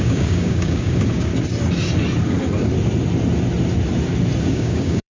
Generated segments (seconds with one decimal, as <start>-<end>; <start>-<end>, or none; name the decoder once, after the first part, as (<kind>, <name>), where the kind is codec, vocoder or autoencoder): 0.0-1.3 (codec, DAC); 4.4-5.1